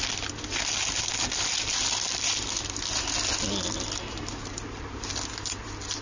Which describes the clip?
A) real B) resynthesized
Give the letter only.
A